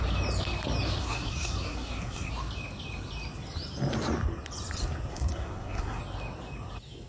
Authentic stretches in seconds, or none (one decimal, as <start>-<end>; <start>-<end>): 0.0-1.0; 2.3-5.1; 6.0-7.1